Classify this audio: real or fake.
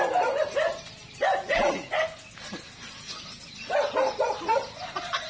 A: real